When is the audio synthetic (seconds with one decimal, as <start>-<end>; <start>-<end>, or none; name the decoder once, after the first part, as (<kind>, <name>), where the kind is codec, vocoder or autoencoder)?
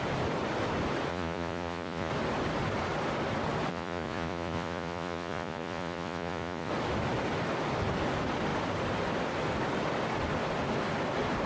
1.1-2.1 (vocoder, Vocos); 3.7-6.7